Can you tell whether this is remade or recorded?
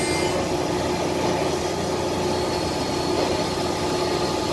recorded